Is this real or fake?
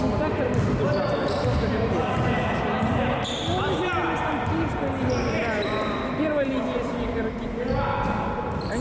real